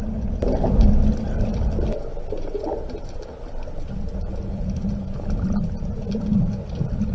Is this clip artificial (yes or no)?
no